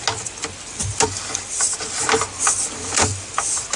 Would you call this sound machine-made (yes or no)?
no